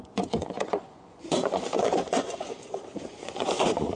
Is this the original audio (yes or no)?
no